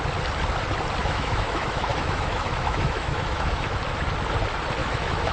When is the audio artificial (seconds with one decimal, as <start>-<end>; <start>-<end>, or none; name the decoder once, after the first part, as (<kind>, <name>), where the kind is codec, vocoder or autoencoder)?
1.0-3.8 (autoencoder, DAC-VAE); 4.8-5.3